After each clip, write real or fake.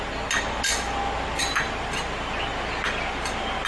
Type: real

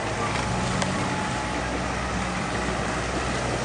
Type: real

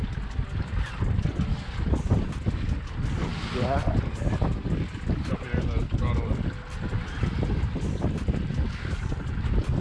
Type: real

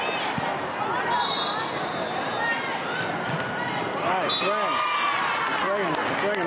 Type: real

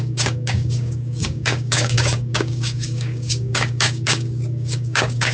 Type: fake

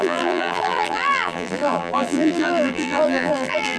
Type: fake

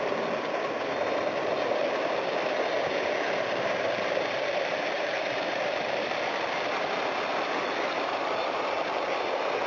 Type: fake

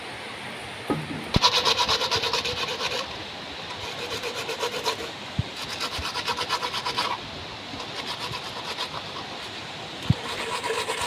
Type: real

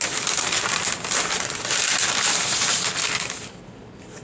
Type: real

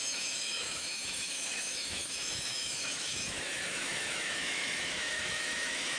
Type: fake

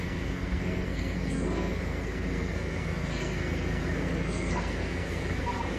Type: fake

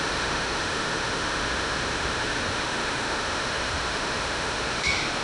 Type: fake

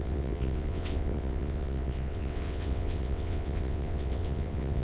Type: fake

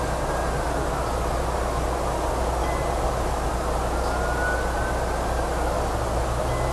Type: real